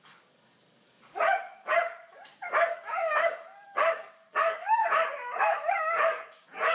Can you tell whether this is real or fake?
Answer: fake